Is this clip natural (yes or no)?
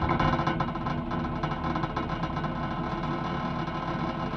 yes